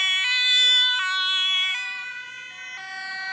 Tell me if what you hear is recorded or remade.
recorded